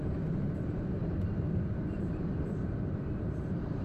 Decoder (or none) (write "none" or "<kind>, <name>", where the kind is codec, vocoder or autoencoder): vocoder, BigVGAN v2